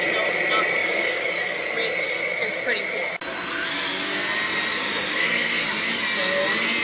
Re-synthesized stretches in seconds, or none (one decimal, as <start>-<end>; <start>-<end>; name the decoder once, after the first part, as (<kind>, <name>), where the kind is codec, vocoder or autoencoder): 0.8-1.6 (codec, DAC); 4.7-5.7